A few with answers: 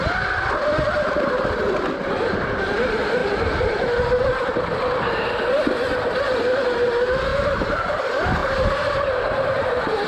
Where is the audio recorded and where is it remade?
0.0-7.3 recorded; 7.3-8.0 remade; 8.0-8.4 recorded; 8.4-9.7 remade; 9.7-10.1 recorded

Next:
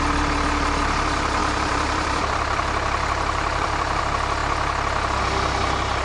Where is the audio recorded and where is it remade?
0.0-1.4 recorded; 1.4-4.0 remade; 4.0-6.0 recorded